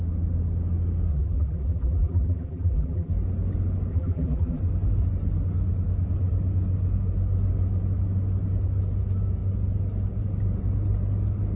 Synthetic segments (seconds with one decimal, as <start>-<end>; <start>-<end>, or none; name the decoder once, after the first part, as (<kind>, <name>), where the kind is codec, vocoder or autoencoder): 1.1-3.1 (vocoder, BigVGAN v2); 3.9-4.6